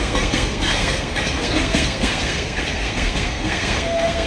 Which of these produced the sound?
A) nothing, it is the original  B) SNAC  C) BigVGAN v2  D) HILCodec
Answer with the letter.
B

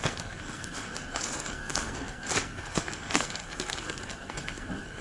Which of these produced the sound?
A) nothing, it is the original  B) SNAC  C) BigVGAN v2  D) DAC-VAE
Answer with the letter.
B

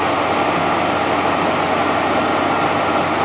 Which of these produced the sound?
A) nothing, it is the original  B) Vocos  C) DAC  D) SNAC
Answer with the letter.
A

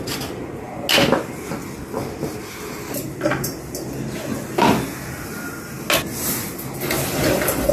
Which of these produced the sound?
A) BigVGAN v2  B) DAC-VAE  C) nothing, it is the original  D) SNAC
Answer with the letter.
C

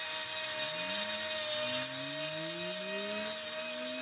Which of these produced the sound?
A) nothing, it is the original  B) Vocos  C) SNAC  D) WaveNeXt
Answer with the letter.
A